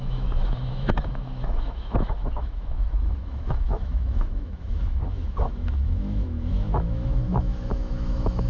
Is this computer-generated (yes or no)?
yes